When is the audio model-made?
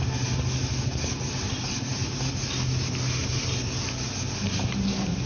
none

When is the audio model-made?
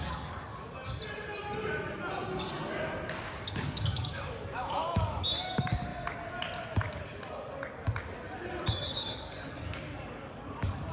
0.0-0.5 (codec, DAC); 3.5-5.9; 8.7-10.9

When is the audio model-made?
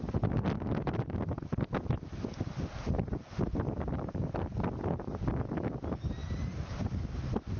none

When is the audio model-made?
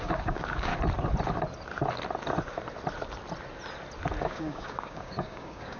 0.0-0.7 (codec, DAC); 4.2-5.8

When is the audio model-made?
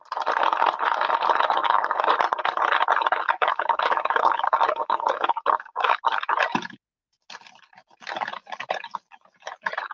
1.6-2.1 (codec, DAC); 3.4-6.0